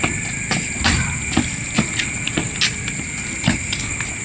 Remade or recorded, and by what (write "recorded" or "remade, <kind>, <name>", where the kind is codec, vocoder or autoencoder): recorded